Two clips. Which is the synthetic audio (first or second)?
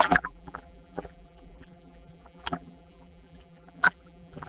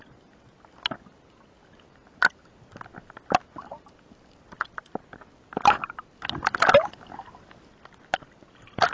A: first